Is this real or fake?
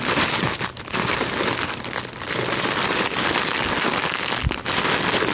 real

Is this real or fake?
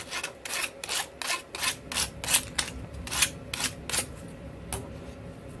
real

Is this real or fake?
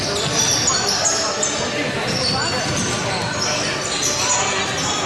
real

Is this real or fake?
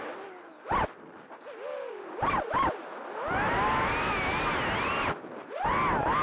real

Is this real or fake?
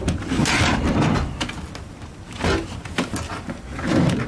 real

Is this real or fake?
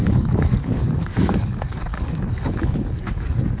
fake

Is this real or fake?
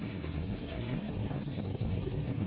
fake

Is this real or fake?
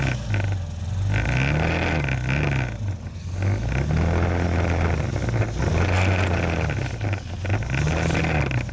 real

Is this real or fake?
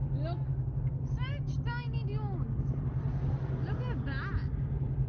real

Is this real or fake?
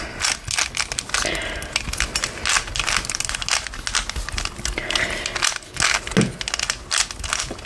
real